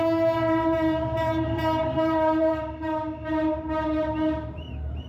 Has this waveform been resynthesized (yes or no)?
yes